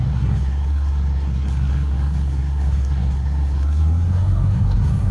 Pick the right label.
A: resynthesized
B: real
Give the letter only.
A